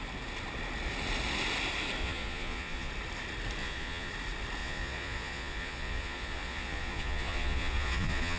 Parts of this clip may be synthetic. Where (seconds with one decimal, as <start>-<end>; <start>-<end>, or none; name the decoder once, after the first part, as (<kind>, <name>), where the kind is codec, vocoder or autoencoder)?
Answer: 2.0-2.9 (vocoder, Vocos); 3.6-4.1; 4.6-8.4